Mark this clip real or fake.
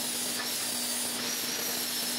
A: real